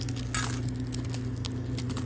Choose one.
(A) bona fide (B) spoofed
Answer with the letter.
A